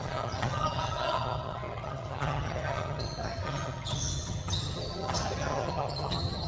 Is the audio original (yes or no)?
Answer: no